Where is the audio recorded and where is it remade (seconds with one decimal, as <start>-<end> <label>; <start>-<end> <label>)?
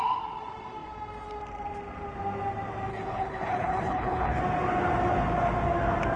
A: 0.0-2.9 recorded; 2.9-4.4 remade; 4.4-6.2 recorded